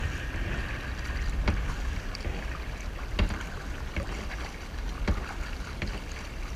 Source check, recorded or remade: recorded